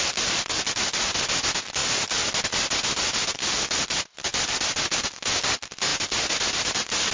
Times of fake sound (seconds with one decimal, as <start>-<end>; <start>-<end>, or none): none